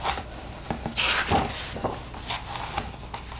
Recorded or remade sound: recorded